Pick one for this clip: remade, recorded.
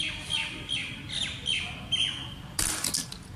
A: recorded